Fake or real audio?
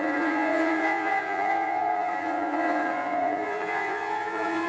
fake